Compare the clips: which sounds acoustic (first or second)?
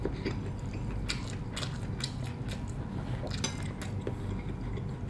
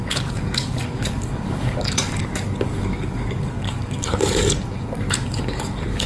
first